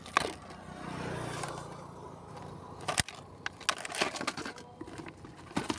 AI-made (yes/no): no